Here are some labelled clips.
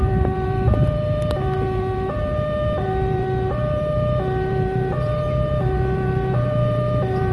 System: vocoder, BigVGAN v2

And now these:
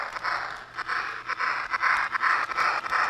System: none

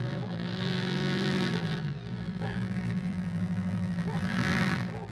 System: vocoder, BigVGAN v2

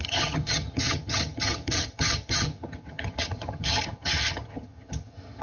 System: vocoder, HiFi-GAN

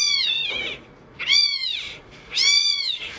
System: vocoder, Vocos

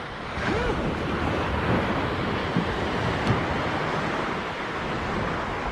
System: none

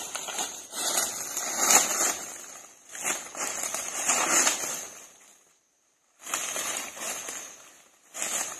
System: none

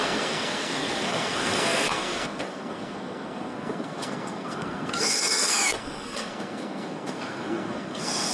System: codec, SNAC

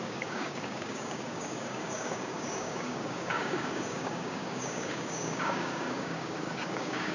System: codec, DAC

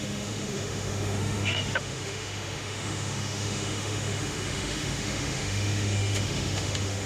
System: autoencoder, DAC-VAE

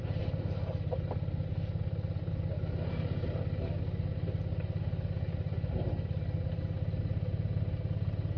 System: none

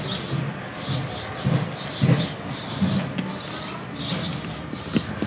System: none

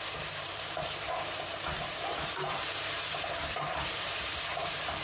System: vocoder, BigVGAN v2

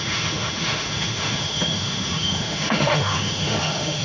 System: autoencoder, DAC-VAE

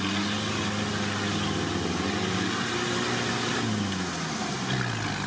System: none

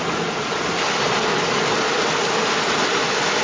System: none